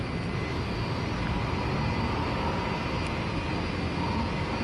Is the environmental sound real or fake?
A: real